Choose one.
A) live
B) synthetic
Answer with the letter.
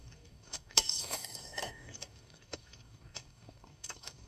B